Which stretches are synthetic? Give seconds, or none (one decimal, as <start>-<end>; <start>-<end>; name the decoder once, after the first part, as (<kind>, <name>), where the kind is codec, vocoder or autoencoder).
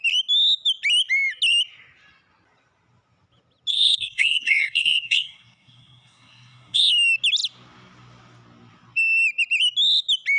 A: 3.7-6.9 (codec, SNAC)